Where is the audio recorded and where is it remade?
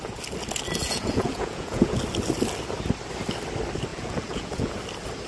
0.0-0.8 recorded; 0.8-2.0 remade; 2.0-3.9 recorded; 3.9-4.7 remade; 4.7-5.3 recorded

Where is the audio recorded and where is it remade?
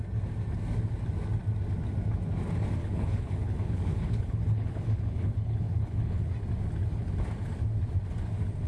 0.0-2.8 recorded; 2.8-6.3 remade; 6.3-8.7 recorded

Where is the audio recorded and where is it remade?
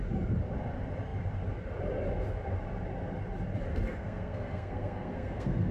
0.0-3.7 recorded; 3.7-5.7 remade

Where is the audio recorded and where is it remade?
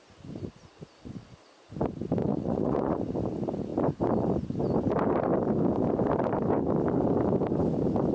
0.0-2.2 recorded; 2.2-3.0 remade; 3.0-8.1 recorded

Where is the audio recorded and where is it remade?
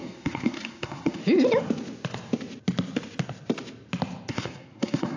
0.0-1.2 remade; 1.2-4.3 recorded; 4.3-5.2 remade